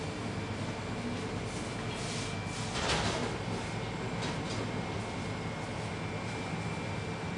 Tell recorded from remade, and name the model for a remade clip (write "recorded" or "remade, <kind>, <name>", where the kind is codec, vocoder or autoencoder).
recorded